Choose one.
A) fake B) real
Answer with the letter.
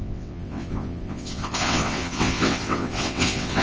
A